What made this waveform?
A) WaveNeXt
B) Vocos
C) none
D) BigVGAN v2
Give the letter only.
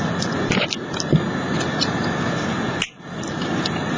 C